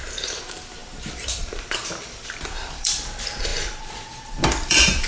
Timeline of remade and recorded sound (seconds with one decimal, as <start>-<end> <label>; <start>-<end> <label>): 0.0-5.1 remade